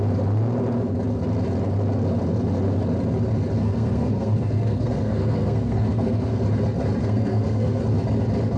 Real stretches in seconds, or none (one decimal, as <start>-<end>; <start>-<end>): 0.0-3.6; 6.4-7.0; 7.8-8.6